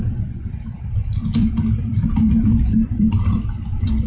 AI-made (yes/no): yes